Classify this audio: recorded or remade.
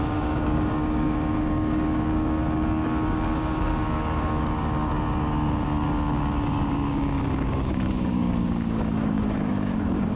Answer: remade